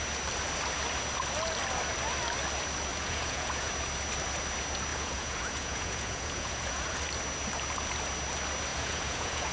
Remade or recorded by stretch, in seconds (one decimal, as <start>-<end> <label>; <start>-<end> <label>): 0.0-2.9 recorded; 2.9-3.7 remade; 3.7-4.9 recorded; 4.9-7.0 remade; 7.0-8.7 recorded; 8.7-9.5 remade